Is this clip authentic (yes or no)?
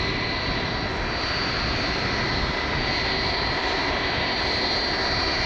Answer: yes